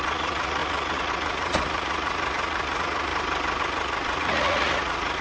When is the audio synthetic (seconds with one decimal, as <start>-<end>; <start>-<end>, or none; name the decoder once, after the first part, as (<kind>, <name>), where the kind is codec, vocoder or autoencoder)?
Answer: 0.0-3.1 (vocoder, Vocos); 3.6-5.2